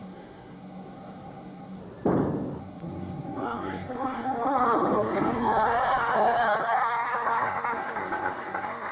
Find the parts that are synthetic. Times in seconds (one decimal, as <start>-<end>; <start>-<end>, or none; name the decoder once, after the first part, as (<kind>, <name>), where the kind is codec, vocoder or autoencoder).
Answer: 0.0-1.8 (codec, SNAC); 2.6-8.9